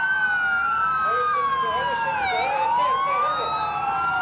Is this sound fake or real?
real